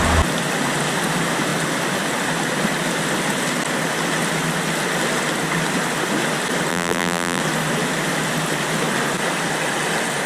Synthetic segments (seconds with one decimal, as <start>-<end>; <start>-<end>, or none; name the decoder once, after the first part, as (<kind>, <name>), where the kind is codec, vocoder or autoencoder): 6.7-7.4 (vocoder, BigVGAN v2)